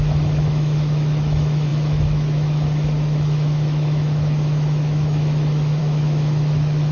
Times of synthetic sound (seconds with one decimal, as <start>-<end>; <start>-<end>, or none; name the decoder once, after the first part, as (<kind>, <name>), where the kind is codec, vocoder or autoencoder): 0.0-6.9 (autoencoder, DAC-VAE)